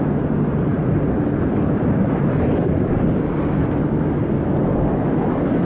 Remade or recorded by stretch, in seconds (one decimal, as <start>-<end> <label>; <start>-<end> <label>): 0.0-5.6 recorded